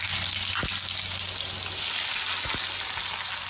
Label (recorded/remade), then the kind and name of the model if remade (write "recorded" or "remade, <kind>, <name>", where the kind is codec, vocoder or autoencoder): recorded